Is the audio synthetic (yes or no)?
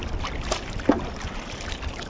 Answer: no